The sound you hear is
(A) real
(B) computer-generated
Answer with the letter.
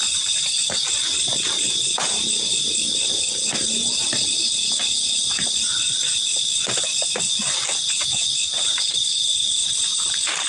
A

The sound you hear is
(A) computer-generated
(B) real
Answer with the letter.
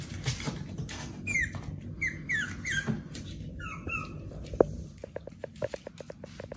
B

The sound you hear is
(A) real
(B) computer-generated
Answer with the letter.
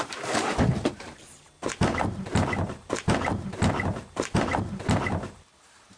B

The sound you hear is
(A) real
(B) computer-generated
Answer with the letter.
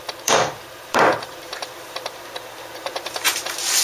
B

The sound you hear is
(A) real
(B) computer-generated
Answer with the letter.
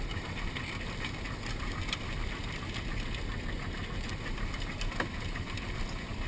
A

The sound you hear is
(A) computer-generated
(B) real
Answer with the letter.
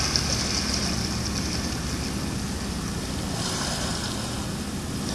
B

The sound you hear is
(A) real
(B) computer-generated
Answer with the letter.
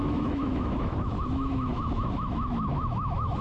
B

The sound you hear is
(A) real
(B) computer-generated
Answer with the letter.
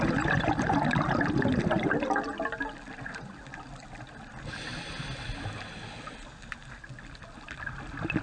A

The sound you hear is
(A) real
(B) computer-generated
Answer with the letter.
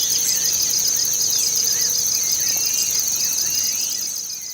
A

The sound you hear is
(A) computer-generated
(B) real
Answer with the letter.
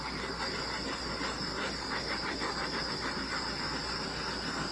B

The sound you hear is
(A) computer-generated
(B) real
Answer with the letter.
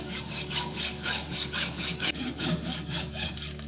A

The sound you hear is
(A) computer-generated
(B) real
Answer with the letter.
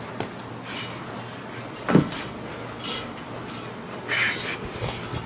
B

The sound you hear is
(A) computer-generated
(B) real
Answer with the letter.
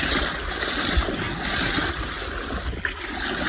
B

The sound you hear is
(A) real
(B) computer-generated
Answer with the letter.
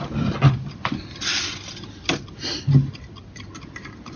A